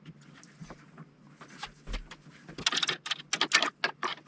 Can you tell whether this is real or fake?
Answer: real